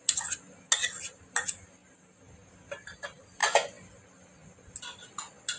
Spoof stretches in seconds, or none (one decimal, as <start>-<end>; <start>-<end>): none